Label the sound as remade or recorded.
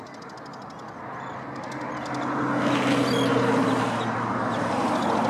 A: recorded